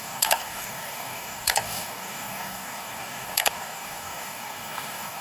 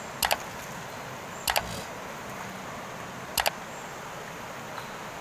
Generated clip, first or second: first